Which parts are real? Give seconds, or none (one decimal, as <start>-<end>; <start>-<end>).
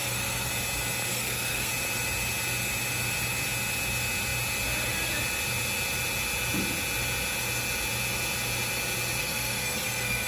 0.5-1.1; 1.7-9.2